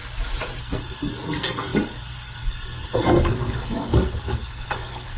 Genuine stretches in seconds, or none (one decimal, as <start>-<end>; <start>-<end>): 0.0-0.6